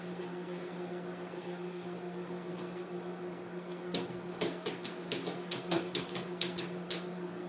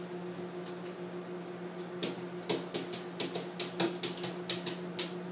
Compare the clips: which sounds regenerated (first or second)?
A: first